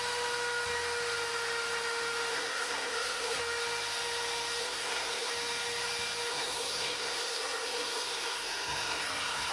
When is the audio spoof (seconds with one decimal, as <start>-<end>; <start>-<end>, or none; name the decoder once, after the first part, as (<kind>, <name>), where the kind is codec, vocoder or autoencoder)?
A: 2.3-3.4 (codec, SNAC); 4.6-5.3; 6.3-9.5